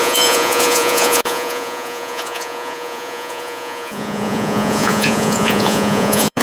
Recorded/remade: remade